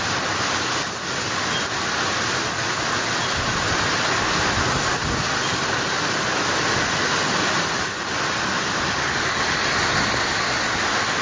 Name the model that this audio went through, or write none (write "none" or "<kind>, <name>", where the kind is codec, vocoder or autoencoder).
none